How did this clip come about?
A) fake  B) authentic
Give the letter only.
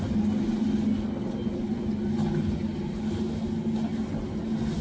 B